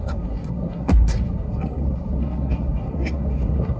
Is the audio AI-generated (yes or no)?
yes